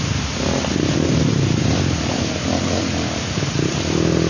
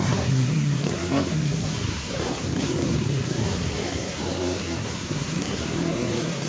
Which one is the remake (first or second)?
second